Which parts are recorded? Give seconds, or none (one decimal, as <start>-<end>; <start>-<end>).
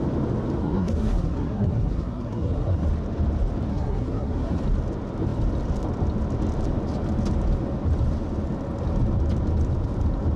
0.0-0.6; 2.9-3.7; 4.6-10.4